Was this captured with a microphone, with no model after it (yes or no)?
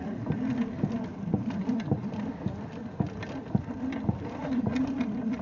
yes